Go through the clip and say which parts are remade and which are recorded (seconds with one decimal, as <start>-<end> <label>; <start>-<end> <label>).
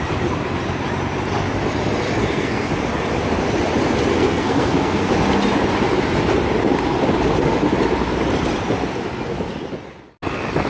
0.0-2.2 recorded; 2.2-2.7 remade; 2.7-4.1 recorded; 4.1-5.1 remade; 5.1-10.7 recorded